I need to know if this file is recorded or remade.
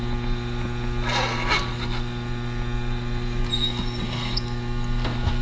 recorded